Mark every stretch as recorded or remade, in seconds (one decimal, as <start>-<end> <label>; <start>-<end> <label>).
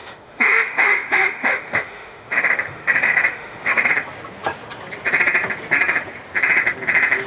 0.0-3.9 remade; 3.9-7.3 recorded